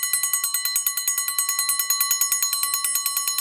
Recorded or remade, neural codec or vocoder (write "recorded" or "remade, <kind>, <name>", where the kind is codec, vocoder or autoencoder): recorded